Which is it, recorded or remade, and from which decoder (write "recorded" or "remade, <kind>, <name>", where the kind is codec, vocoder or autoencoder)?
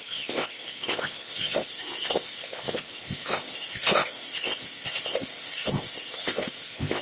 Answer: remade, codec, ZipCodec